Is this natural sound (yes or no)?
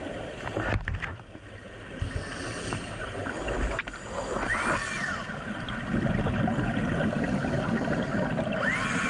yes